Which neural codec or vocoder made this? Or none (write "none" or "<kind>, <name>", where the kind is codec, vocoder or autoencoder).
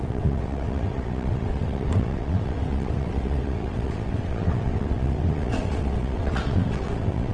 vocoder, WaveNeXt